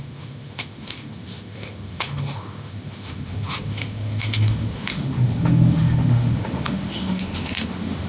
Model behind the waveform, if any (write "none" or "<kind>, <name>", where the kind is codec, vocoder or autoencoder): autoencoder, DAC-VAE